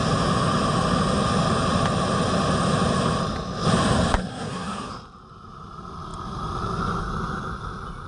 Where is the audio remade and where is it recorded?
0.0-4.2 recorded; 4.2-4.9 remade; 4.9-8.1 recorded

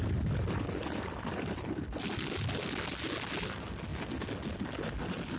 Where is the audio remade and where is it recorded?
0.0-5.4 recorded

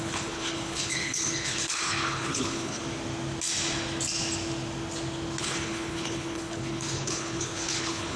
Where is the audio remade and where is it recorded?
0.0-2.8 remade; 2.8-5.4 recorded; 5.4-8.2 remade

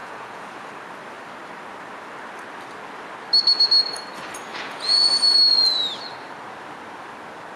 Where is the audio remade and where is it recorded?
0.0-0.7 remade; 0.7-4.5 recorded; 4.5-5.1 remade; 5.1-7.6 recorded